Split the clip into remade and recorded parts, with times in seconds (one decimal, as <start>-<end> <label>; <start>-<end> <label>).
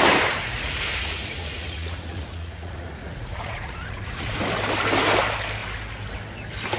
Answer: 0.0-0.4 recorded; 0.4-4.5 remade; 4.5-6.8 recorded